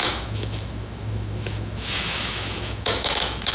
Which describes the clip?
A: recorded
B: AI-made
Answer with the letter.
B